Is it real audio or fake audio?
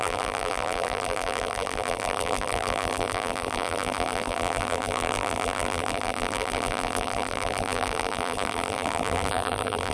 fake